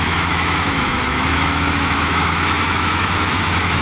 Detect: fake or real fake